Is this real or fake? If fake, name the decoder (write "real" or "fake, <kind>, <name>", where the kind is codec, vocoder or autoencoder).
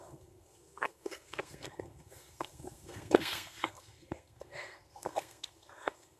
fake, codec, SNAC